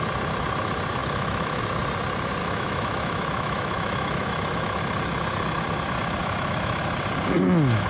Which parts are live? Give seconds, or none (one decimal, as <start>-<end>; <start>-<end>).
0.0-1.0; 1.6-2.4; 4.8-6.2; 6.8-7.9

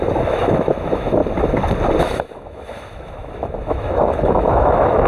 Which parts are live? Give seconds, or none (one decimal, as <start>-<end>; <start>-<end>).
1.2-2.0

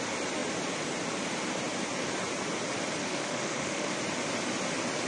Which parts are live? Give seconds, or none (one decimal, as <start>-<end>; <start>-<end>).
0.0-3.0; 3.9-5.1

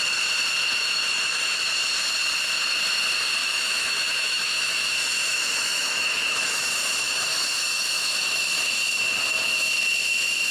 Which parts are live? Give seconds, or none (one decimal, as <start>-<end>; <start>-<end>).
0.0-0.8; 1.6-3.4; 8.5-10.5

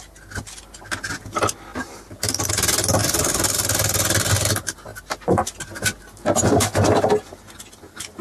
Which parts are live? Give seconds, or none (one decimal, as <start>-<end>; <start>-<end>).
0.0-8.2